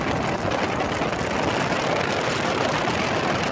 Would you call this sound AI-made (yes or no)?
no